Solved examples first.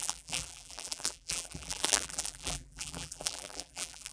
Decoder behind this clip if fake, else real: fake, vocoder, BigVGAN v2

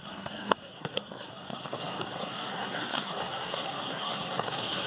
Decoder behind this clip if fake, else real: fake, codec, SNAC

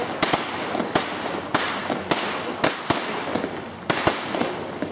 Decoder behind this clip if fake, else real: real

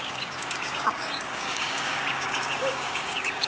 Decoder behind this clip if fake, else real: fake, codec, DAC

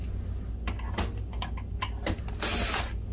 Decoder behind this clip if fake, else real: real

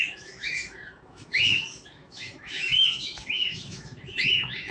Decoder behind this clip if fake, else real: fake, autoencoder, DAC-VAE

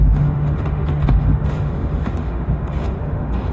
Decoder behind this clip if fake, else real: fake, autoencoder, DAC-VAE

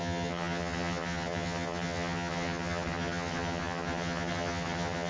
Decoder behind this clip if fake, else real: fake, vocoder, HiFi-GAN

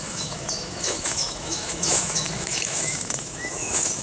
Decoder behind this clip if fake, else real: fake, autoencoder, DAC-VAE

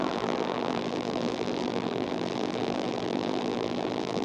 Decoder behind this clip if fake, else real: fake, vocoder, BigVGAN v2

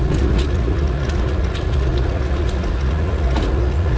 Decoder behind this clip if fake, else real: fake, vocoder, Vocos